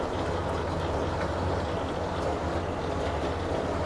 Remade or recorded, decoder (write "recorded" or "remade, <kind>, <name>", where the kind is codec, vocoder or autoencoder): recorded